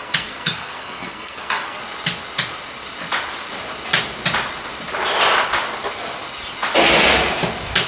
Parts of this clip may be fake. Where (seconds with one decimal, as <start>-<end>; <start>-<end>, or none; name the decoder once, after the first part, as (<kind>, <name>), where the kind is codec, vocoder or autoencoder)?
0.0-1.8 (codec, SNAC)